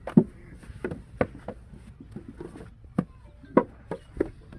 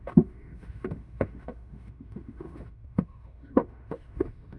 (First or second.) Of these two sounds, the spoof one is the second